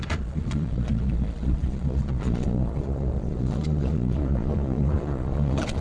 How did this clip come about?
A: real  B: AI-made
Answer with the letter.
B